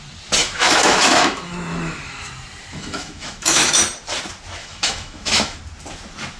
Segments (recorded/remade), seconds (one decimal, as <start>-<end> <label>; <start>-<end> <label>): 0.0-0.4 recorded; 0.4-2.3 remade; 2.3-2.7 recorded; 2.7-3.7 remade; 3.7-4.6 recorded; 4.6-5.6 remade; 5.6-6.4 recorded